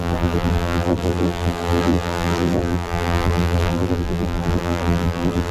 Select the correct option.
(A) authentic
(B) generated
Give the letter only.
B